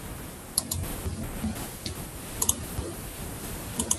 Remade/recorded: recorded